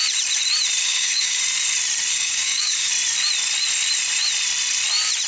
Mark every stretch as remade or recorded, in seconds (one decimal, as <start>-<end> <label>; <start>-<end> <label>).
0.0-0.8 recorded; 0.8-1.4 remade; 1.4-2.1 recorded; 2.1-2.9 remade; 2.9-5.3 recorded